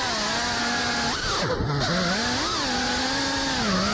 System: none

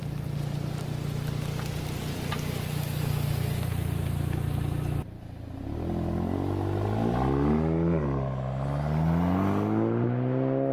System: none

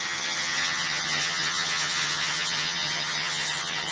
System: vocoder, HiFi-GAN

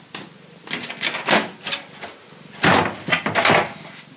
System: none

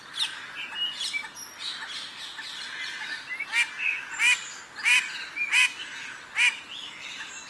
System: none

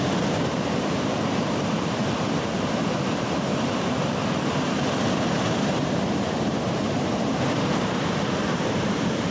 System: vocoder, BigVGAN v2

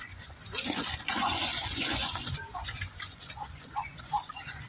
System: vocoder, Vocos